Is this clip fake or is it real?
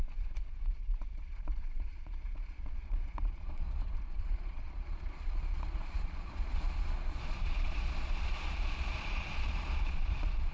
fake